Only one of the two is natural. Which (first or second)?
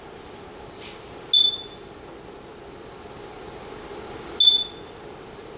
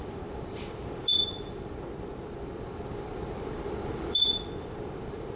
first